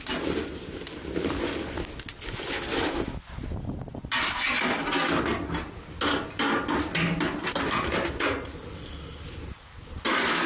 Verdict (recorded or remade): recorded